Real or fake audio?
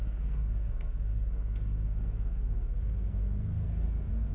fake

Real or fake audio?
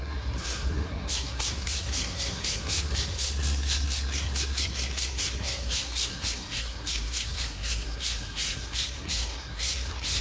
fake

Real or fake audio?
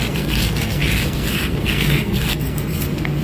fake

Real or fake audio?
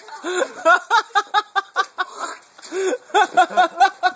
real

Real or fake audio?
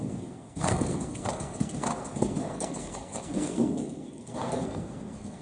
fake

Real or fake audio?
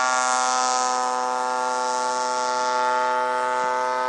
real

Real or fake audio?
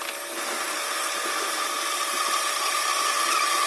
real